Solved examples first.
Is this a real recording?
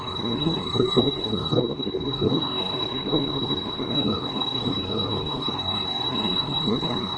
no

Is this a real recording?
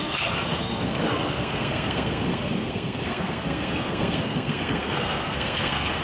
no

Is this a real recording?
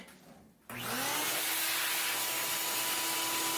yes